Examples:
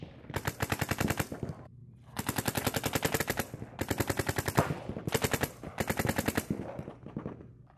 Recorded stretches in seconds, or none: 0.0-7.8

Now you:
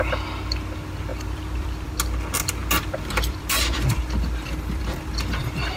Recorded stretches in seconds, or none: 0.0-1.1; 1.9-2.6